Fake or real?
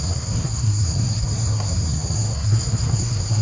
fake